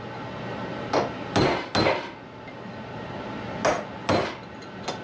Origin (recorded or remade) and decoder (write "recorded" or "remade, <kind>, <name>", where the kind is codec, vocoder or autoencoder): recorded